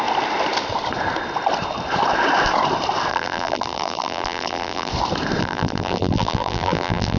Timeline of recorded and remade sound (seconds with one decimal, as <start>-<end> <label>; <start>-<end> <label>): 0.0-3.1 recorded; 3.1-4.9 remade; 4.9-5.4 recorded; 5.4-7.2 remade